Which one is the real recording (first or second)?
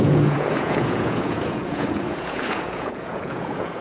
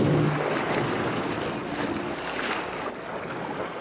second